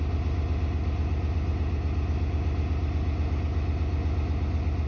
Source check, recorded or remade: recorded